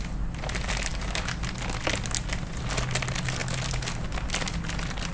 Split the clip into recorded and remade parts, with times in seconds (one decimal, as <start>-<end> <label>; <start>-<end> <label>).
0.0-5.1 recorded